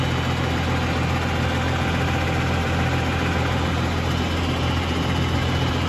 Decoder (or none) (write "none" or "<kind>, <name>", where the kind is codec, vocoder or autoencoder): none